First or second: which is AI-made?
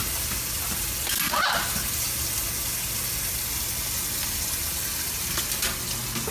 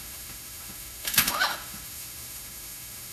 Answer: second